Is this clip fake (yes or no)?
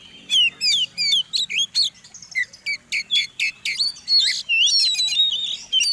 no